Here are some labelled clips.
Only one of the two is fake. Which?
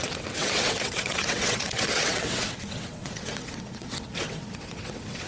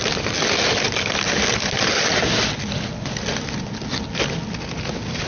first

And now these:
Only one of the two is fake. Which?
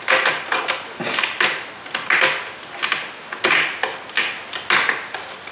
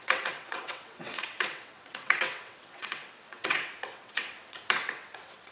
second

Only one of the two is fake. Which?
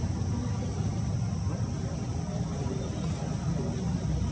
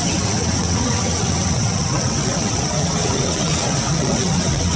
second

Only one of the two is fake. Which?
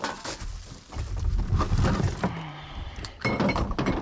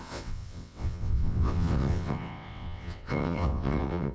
second